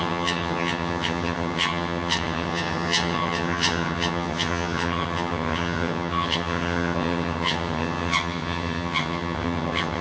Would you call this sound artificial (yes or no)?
yes